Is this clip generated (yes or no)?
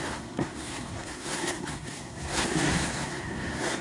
yes